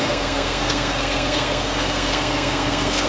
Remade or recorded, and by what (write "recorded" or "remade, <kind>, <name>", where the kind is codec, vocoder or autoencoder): remade, codec, SNAC